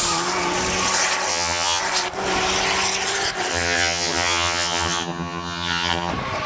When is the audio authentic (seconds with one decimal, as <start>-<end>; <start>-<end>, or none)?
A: 0.0-1.3; 1.8-3.5; 6.1-6.5